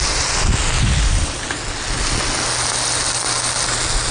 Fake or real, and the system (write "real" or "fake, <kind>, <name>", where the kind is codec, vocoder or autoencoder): real